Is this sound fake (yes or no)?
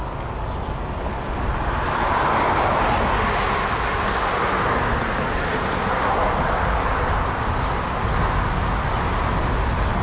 no